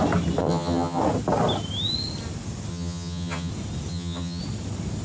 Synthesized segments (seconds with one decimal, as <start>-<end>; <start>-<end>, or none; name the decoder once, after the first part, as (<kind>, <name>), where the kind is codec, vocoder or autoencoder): 0.4-1.0 (vocoder, HiFi-GAN); 2.7-3.5; 3.9-4.4